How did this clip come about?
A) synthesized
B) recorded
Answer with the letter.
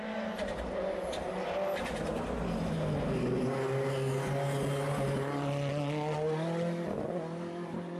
B